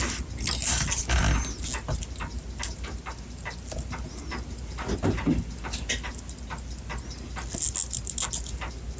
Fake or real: real